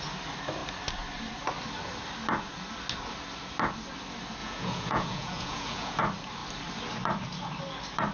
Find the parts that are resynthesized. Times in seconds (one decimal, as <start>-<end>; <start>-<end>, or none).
4.4-6.0